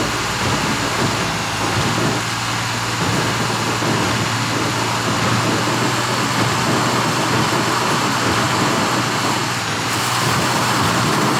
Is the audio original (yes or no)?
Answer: yes